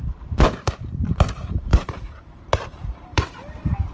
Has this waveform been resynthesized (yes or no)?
yes